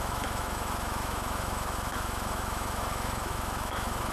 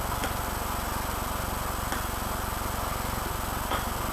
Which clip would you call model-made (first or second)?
first